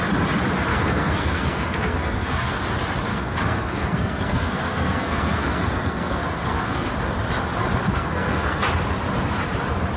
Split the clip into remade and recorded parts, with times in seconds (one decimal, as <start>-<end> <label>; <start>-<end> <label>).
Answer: 0.0-0.7 recorded; 0.7-2.6 remade; 2.6-3.1 recorded; 3.1-6.9 remade; 6.9-7.9 recorded; 7.9-8.6 remade; 8.6-10.0 recorded